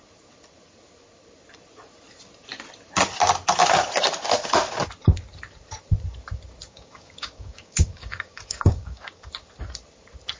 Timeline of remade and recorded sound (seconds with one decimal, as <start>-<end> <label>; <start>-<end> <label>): 0.0-6.6 recorded; 6.6-9.3 remade; 9.3-10.4 recorded